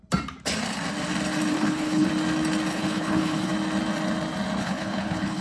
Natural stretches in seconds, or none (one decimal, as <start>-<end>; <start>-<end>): 0.0-1.5; 2.1-2.7; 3.5-4.6